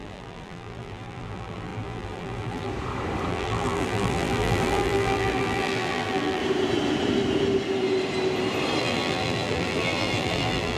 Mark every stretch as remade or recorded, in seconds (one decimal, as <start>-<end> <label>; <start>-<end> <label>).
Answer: 0.0-2.7 remade; 2.7-3.3 recorded; 3.3-6.4 remade; 6.4-8.8 recorded; 8.8-10.8 remade